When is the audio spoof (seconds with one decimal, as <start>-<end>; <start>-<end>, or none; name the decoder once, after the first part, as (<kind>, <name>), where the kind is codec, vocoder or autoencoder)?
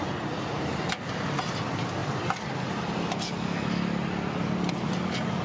none